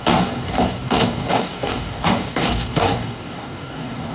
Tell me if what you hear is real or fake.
fake